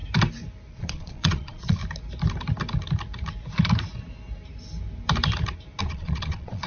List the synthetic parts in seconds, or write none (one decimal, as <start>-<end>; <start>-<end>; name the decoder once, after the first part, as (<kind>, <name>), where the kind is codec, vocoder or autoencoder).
0.7-1.8 (vocoder, Vocos); 5.8-6.7